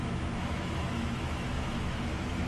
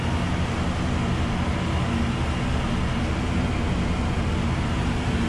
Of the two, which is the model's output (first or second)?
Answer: first